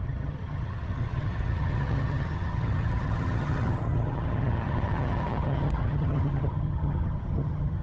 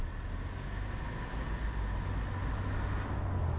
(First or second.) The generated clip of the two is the first